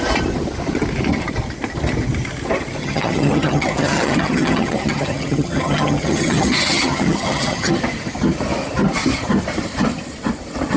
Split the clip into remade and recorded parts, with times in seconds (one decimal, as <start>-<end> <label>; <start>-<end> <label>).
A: 0.0-2.8 recorded; 2.8-7.7 remade; 7.7-10.8 recorded